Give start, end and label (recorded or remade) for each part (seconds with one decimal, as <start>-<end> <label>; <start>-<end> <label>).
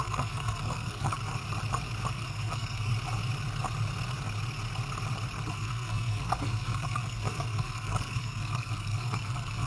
0.0-1.2 remade; 1.2-2.1 recorded; 2.1-2.9 remade; 2.9-5.5 recorded; 5.5-9.7 remade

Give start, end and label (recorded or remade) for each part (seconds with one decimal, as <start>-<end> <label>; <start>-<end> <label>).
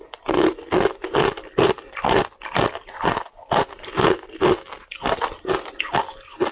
0.0-6.5 recorded